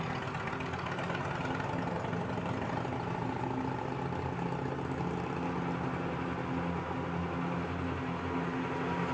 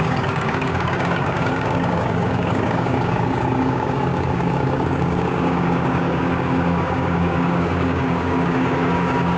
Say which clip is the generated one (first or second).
second